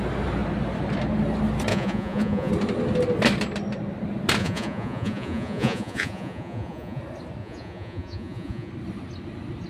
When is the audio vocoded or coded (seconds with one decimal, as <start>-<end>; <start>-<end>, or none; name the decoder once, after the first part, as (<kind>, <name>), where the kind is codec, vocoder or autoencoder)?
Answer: 1.7-2.5 (vocoder, Vocos); 4.4-7.0; 7.4-8.7